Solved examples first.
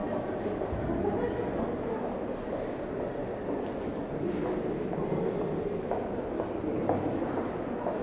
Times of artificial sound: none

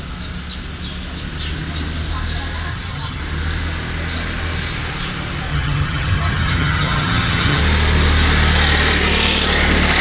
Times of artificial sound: 2.7-3.2 (vocoder, HiFi-GAN); 5.5-7.6